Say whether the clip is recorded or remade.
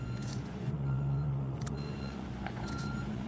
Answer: remade